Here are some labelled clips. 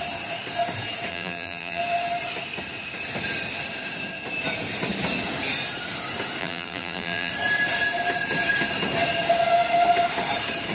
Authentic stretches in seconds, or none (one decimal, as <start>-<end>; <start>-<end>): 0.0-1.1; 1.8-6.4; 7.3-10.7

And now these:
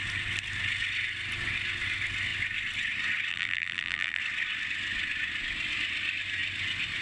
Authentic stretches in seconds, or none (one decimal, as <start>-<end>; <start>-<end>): 0.0-3.3; 4.2-7.0

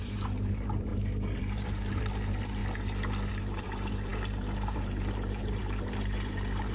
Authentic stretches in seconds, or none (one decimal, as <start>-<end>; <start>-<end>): 0.9-1.4; 2.6-3.3

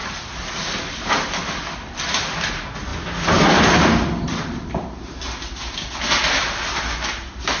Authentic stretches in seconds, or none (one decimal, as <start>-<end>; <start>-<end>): 2.5-2.9

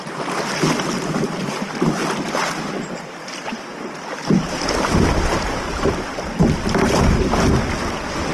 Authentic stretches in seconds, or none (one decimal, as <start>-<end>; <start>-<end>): 0.0-8.3